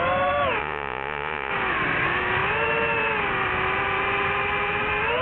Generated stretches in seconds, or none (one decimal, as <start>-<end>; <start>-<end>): 0.6-1.5